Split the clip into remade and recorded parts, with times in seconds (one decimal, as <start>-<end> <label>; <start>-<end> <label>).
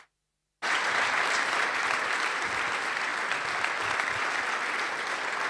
0.0-5.5 recorded